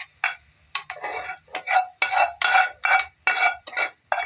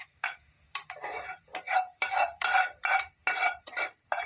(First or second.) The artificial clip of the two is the second